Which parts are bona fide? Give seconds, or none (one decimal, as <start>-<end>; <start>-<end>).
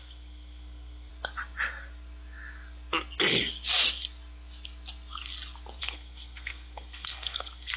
1.1-5.8